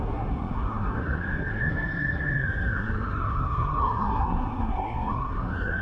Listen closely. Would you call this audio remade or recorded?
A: remade